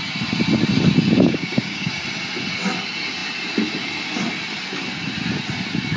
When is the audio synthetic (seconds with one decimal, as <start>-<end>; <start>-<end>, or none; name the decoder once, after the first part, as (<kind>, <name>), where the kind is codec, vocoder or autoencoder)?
1.3-1.9 (codec, DAC)